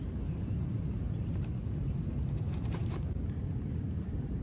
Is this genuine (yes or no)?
no